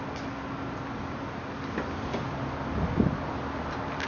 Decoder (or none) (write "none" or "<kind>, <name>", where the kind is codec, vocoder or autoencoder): none